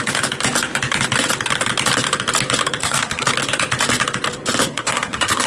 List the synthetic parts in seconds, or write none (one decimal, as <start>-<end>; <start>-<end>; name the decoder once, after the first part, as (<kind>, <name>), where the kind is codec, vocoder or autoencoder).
2.8-3.3 (codec, SNAC); 4.6-5.5